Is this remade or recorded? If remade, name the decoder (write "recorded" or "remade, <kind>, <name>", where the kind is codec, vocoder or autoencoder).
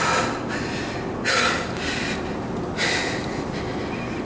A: recorded